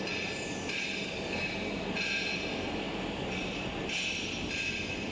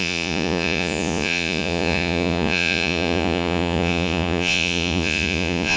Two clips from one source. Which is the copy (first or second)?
second